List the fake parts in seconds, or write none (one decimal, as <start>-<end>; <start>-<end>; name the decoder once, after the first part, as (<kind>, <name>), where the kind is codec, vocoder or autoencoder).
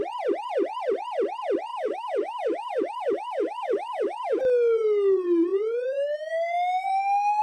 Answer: 1.7-4.4 (autoencoder, DAC-VAE)